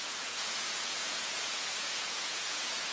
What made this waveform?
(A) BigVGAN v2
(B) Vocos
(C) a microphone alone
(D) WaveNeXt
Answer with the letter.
B